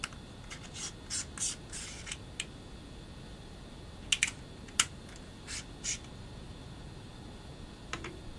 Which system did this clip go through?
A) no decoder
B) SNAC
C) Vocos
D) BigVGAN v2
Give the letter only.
A